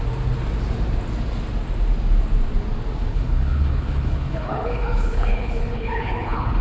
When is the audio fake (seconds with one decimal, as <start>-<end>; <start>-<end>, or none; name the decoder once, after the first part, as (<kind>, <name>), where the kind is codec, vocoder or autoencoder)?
3.1-6.6 (codec, HILCodec)